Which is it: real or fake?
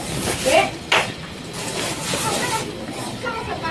real